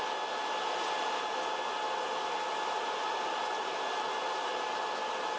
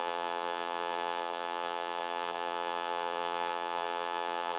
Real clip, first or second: first